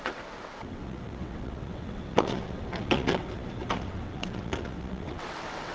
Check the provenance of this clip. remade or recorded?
remade